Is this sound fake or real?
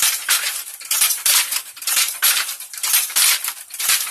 fake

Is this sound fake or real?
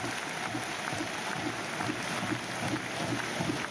real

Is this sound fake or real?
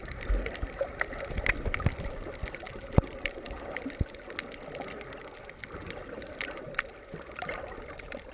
fake